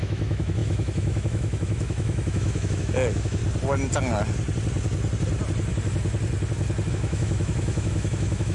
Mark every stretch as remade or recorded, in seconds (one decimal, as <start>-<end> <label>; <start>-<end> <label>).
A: 0.0-3.4 remade; 3.4-6.9 recorded; 6.9-8.5 remade